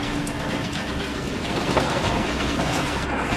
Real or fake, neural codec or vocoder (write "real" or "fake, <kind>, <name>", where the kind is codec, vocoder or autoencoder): fake, codec, SNAC